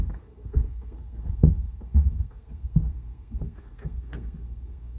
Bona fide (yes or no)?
no